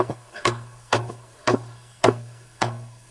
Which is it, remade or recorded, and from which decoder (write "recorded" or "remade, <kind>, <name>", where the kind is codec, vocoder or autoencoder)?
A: remade, codec, SNAC